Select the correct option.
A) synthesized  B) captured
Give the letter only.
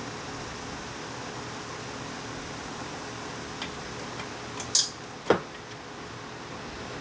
B